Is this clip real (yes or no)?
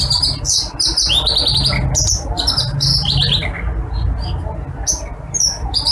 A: yes